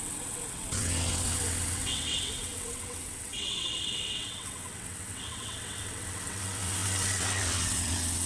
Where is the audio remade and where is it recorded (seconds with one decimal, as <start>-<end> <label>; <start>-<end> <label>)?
0.0-8.3 remade